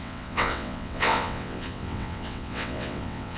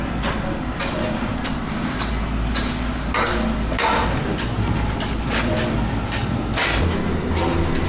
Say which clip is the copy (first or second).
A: first